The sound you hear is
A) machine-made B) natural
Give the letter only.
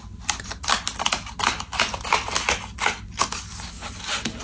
B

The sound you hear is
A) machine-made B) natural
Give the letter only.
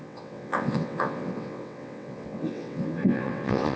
A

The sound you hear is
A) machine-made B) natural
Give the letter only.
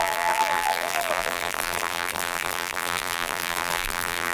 A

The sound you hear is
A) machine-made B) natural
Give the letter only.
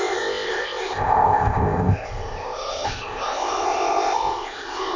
A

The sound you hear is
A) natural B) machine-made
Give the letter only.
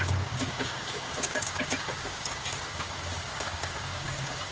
B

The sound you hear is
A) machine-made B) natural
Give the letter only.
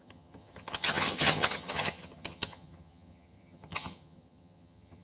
A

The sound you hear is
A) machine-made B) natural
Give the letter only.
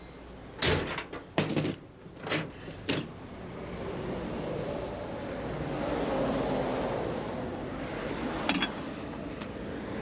B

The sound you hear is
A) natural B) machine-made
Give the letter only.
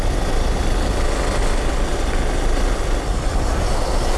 A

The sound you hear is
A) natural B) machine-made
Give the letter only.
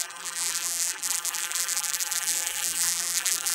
B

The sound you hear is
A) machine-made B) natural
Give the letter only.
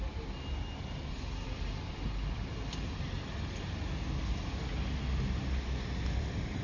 B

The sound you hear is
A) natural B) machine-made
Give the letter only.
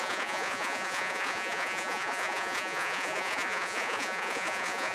B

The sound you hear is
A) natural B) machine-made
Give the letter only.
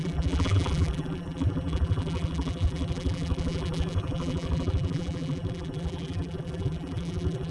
B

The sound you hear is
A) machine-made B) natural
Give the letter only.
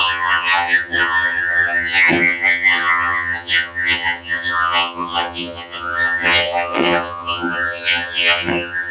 A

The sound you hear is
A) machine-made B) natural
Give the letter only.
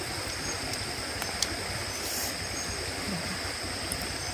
B